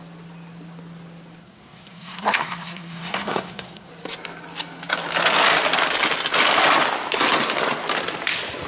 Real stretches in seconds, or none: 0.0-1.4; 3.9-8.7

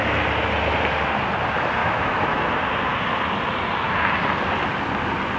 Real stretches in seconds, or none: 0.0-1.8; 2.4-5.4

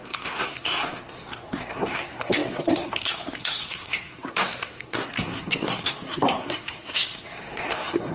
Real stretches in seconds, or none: none

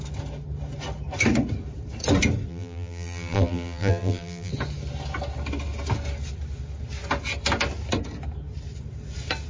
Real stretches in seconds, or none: 0.0-2.5; 4.5-9.5